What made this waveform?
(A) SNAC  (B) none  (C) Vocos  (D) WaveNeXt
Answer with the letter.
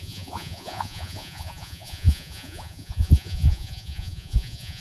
C